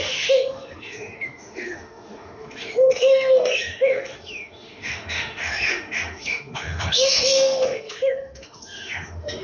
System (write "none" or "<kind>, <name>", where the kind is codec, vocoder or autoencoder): autoencoder, DAC-VAE